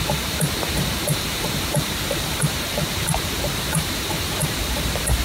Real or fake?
fake